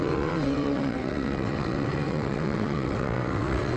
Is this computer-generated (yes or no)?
yes